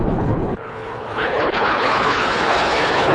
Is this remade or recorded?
remade